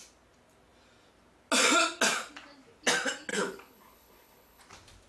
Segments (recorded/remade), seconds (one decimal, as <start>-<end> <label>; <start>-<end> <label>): 0.0-3.3 recorded; 3.3-4.6 remade; 4.6-5.1 recorded